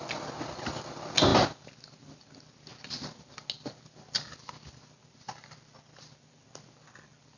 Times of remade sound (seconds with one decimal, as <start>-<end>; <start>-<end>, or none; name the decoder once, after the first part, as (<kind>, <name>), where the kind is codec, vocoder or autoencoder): none